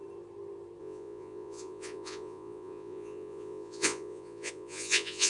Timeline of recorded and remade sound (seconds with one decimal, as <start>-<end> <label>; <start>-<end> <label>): 0.0-0.8 recorded; 0.8-5.3 remade